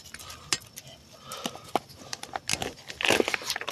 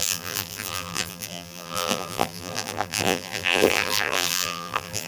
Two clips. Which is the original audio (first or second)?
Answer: first